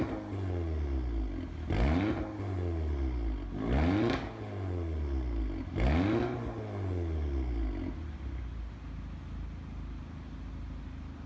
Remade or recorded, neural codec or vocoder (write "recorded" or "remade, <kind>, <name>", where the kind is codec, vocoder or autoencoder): recorded